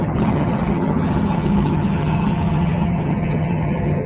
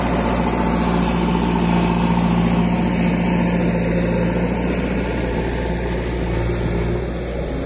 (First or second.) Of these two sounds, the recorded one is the second